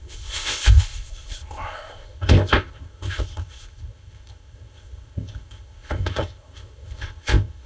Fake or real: fake